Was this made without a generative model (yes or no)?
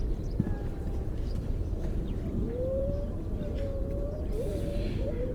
no